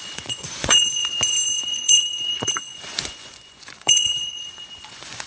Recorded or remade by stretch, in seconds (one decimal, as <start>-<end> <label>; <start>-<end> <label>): 0.0-1.0 remade; 1.0-1.6 recorded; 1.6-5.3 remade